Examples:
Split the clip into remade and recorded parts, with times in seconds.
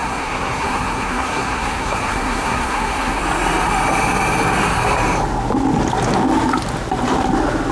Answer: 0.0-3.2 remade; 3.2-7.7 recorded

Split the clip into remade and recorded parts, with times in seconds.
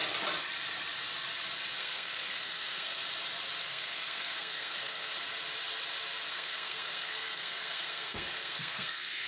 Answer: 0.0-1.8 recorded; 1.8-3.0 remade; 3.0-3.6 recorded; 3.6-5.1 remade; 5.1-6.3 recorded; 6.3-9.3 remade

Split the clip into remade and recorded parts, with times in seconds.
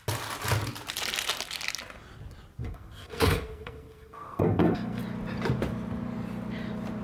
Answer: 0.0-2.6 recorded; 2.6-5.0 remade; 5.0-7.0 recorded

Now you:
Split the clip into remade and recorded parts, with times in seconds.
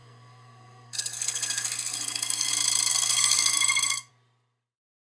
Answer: 0.0-2.5 remade; 2.5-2.9 recorded; 2.9-4.1 remade; 4.1-5.2 recorded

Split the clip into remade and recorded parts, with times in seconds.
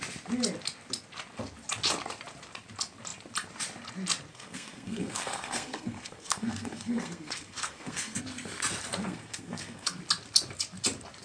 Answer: 0.0-4.3 recorded; 4.3-8.2 remade; 8.2-9.0 recorded; 9.0-10.0 remade; 10.0-11.2 recorded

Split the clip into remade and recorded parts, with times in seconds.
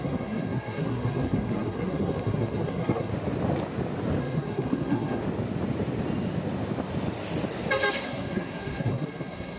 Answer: 0.0-3.1 remade; 3.1-4.2 recorded; 4.2-5.2 remade; 5.2-7.9 recorded; 7.9-9.6 remade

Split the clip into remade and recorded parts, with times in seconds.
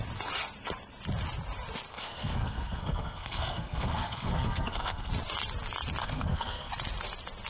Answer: 0.0-1.9 recorded; 1.9-5.1 remade; 5.1-6.0 recorded; 6.0-6.7 remade; 6.7-7.5 recorded